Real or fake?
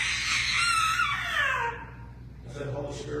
real